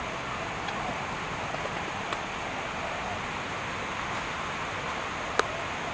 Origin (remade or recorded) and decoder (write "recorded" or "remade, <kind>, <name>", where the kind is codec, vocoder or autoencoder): recorded